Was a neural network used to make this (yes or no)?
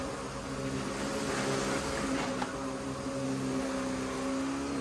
no